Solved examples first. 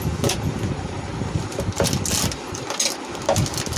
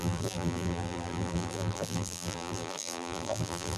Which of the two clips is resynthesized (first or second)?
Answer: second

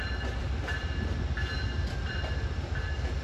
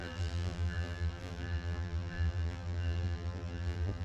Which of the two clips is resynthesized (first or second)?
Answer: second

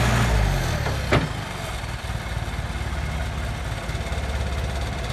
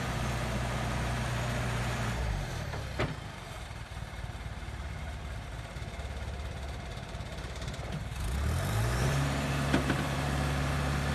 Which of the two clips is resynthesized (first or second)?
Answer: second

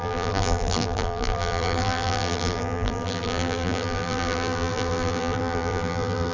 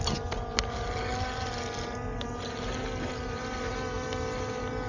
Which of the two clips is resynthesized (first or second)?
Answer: first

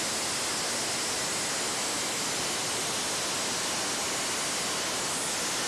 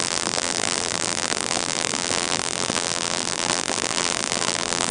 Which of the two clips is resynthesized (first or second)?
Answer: second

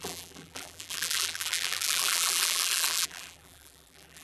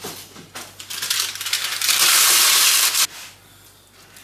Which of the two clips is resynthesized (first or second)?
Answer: first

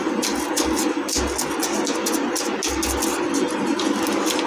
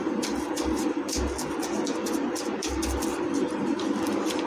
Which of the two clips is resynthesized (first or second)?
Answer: second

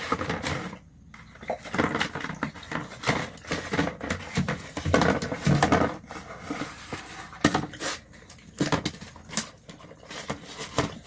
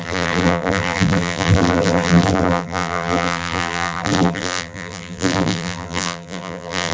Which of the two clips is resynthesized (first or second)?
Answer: second